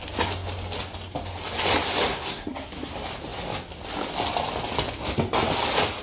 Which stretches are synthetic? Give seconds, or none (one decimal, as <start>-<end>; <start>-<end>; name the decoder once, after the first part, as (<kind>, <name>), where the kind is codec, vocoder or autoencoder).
2.1-2.9 (codec, SNAC)